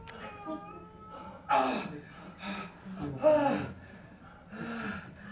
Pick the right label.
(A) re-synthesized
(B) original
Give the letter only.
B